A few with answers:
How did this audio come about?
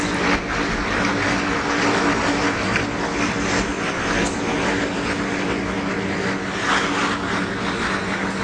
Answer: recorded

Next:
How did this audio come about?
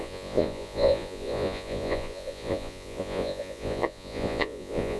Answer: remade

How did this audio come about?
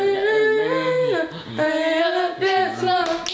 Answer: recorded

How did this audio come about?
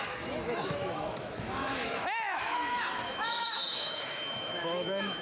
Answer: remade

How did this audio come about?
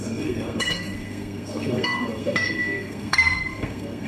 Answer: remade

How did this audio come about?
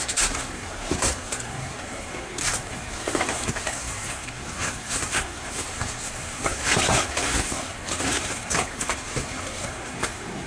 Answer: remade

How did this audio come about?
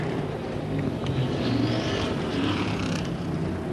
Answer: remade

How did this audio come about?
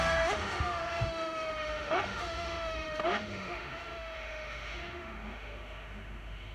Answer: remade